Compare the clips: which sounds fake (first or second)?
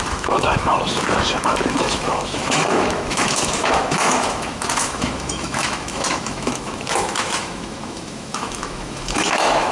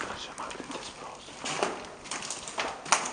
first